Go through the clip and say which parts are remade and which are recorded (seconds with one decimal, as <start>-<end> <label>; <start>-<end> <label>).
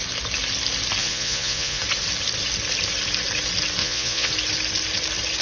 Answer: 0.0-1.0 recorded; 1.0-1.8 remade; 1.8-3.8 recorded; 3.8-4.3 remade; 4.3-5.4 recorded